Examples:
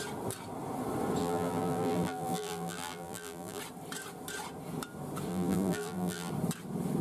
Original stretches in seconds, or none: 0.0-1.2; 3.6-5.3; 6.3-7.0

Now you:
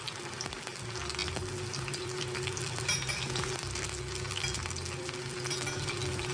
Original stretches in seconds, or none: 0.0-6.3

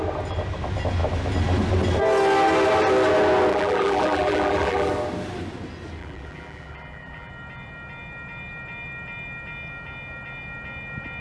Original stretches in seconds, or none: 0.0-3.5; 4.9-6.0; 7.3-11.2

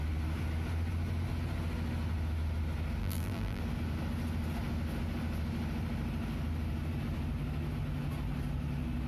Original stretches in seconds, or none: 0.0-3.0; 3.6-9.1

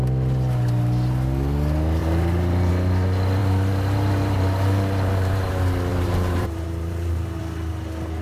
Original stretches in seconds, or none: 0.0-2.0; 2.7-3.4; 5.5-5.9; 7.4-8.2

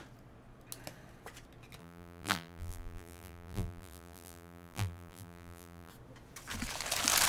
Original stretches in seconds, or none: 0.0-1.8; 5.9-7.3